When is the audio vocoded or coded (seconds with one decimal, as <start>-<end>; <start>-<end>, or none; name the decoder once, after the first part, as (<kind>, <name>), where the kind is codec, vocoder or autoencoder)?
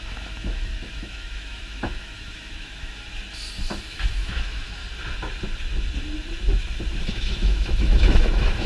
0.0-3.1 (autoencoder, DAC-VAE); 3.9-4.8; 7.1-8.7